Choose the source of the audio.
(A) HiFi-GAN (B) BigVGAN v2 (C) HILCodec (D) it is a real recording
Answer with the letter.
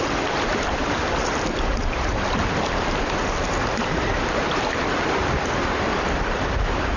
B